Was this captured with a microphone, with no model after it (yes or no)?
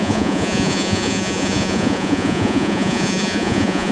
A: no